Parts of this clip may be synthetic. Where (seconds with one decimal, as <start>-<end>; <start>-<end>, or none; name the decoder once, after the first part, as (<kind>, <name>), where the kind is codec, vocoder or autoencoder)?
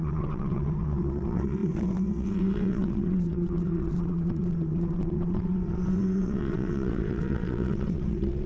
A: 0.0-8.5 (vocoder, WaveNeXt)